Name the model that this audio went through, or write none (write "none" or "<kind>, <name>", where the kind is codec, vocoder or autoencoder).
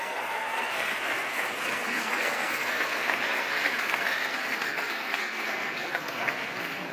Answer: codec, SNAC